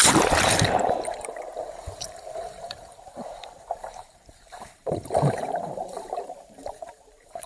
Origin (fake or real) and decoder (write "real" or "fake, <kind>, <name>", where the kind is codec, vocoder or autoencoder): fake, vocoder, BigVGAN v2